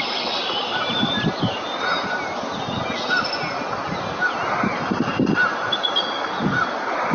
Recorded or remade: recorded